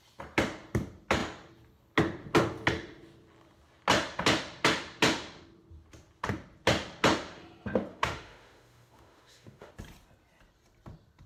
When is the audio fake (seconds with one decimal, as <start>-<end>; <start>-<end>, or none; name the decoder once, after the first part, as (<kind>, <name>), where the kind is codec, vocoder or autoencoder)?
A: 7.9-9.7 (autoencoder, DAC-VAE)